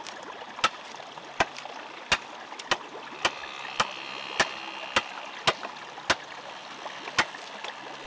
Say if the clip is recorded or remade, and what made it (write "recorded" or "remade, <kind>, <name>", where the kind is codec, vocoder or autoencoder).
recorded